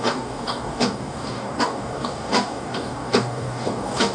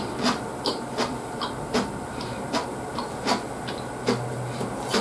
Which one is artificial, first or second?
first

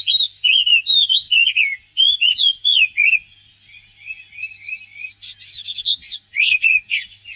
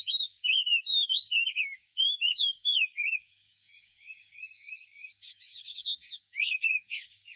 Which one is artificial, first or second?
second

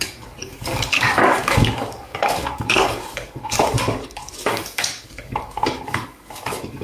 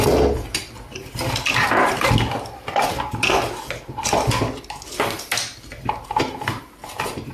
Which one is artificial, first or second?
first